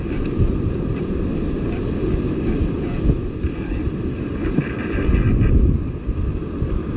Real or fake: real